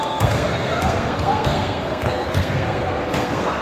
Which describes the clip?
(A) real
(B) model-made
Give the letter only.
B